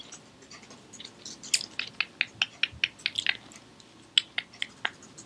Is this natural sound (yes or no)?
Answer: yes